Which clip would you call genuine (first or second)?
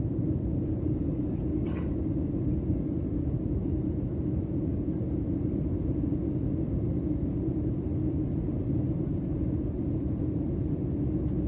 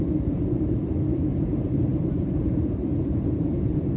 first